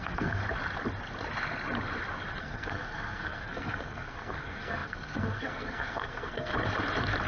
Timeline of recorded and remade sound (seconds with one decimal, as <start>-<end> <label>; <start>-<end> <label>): 0.0-0.4 remade; 0.4-2.4 recorded; 2.4-6.5 remade; 6.5-7.3 recorded